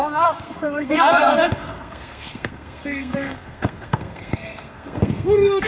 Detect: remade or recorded remade